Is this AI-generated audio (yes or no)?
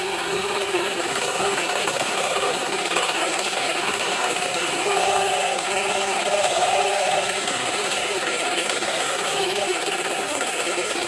yes